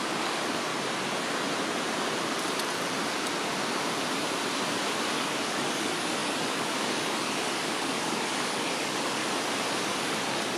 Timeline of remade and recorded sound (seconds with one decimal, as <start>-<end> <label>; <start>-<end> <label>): 0.0-0.7 remade; 0.7-5.1 recorded; 5.1-9.2 remade; 9.2-9.8 recorded; 9.8-10.6 remade